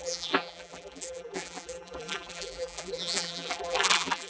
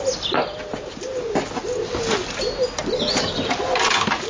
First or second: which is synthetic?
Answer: first